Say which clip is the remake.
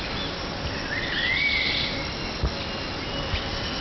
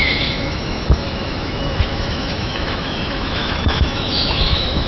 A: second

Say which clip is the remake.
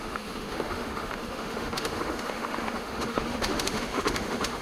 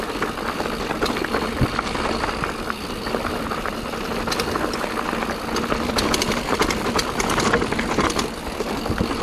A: first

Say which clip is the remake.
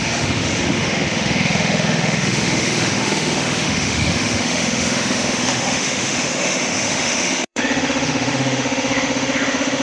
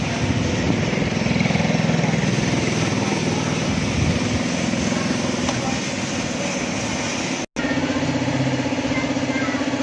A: first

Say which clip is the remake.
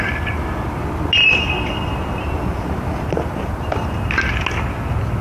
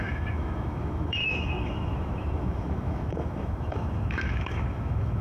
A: second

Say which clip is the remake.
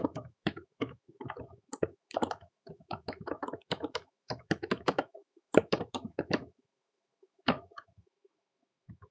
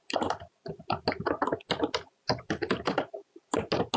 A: first